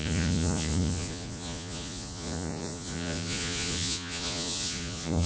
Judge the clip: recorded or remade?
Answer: remade